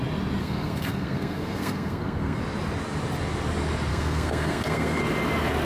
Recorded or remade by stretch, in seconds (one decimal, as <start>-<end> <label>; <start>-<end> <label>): 0.0-0.4 recorded; 0.4-2.4 remade; 2.4-3.9 recorded; 3.9-5.0 remade; 5.0-5.6 recorded